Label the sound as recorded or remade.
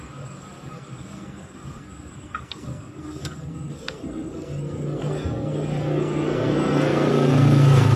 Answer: remade